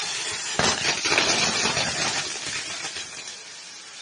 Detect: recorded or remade remade